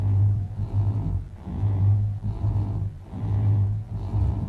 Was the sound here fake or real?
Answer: fake